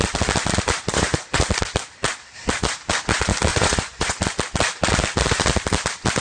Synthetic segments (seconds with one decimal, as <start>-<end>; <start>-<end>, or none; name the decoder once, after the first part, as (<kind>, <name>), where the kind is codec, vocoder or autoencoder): 0.9-1.4 (vocoder, Vocos); 3.5-4.2